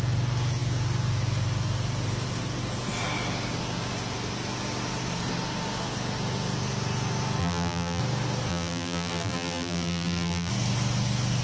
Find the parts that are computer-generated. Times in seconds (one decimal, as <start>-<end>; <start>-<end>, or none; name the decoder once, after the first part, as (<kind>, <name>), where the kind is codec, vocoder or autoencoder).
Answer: 7.4-8.0 (vocoder, BigVGAN v2); 8.5-10.5